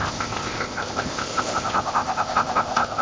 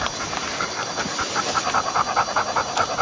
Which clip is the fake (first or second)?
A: first